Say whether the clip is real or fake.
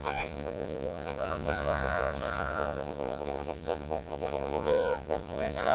fake